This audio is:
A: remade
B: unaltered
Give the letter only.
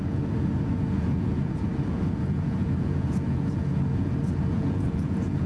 A